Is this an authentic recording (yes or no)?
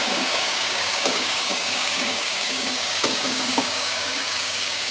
no